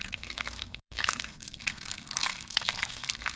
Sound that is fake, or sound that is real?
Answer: fake